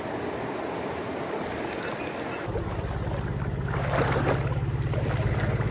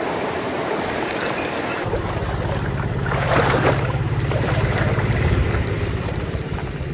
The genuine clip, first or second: first